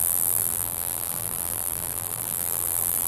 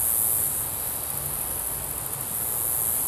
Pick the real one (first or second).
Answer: second